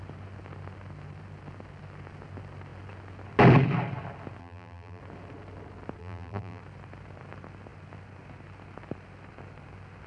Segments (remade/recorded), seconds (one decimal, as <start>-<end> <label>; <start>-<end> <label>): 0.0-4.4 recorded; 4.4-5.0 remade; 5.0-6.0 recorded; 6.0-6.6 remade; 6.6-10.1 recorded